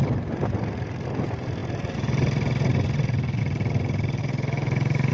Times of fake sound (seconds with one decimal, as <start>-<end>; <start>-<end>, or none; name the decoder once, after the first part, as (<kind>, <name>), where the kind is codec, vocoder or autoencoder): 4.2-5.1 (autoencoder, DAC-VAE)